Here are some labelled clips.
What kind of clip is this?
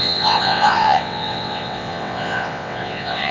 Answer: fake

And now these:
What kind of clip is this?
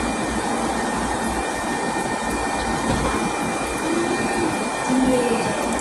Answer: fake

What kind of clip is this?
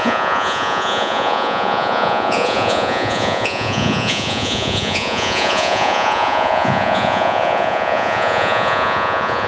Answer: fake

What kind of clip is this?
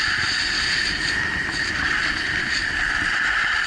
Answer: fake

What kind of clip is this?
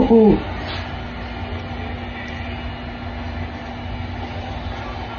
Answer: real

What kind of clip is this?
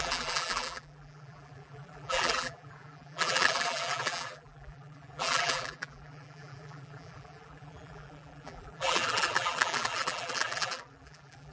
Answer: fake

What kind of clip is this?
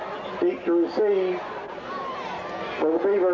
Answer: real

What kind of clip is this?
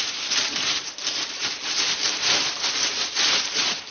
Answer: fake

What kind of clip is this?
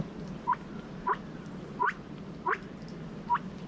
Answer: real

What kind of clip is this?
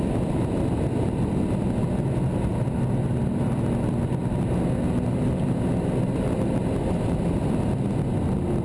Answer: real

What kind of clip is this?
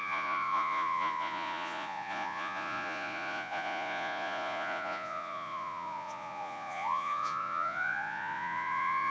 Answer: fake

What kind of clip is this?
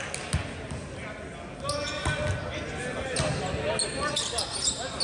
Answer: real